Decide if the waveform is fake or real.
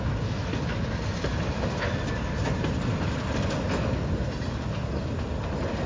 real